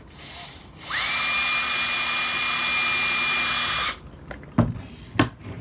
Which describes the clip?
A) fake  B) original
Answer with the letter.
B